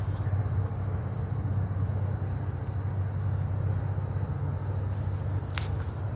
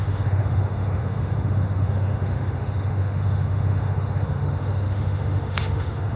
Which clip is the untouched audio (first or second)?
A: first